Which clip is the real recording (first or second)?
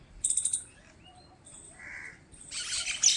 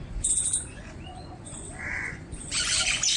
first